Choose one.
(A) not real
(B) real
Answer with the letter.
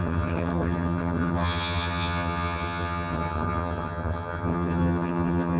A